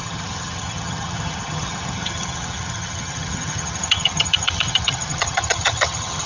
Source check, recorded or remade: remade